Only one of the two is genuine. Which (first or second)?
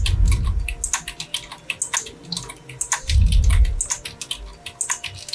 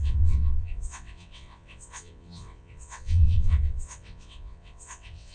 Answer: first